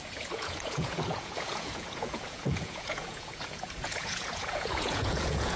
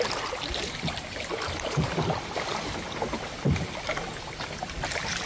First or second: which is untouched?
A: second